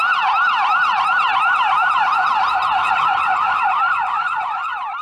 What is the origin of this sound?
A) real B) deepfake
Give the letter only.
B